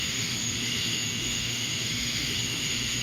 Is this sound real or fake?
fake